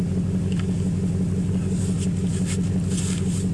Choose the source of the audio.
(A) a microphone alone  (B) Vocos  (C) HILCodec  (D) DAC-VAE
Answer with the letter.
A